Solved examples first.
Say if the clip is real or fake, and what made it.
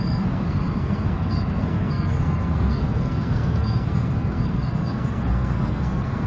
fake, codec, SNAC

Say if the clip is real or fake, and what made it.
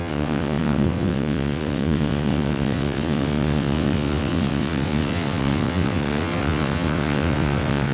fake, vocoder, WaveNeXt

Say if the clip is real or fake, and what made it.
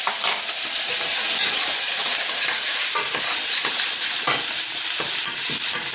real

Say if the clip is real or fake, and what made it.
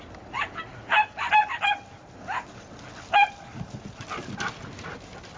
real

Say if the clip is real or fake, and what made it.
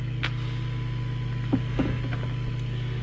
real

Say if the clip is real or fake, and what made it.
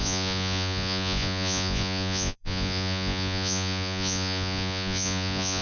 fake, vocoder, Vocos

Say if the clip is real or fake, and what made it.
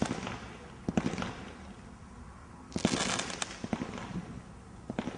real